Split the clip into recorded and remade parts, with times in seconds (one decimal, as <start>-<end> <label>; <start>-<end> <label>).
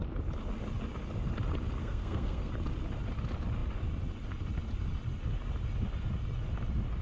0.0-1.8 recorded; 1.8-2.5 remade; 2.5-7.0 recorded